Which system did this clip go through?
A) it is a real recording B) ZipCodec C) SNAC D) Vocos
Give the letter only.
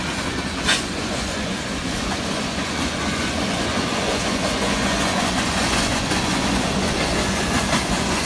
D